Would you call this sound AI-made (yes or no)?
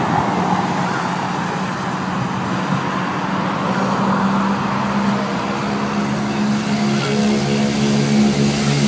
no